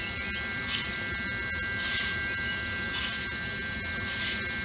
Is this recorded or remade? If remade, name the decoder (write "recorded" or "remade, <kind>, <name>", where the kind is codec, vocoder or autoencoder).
recorded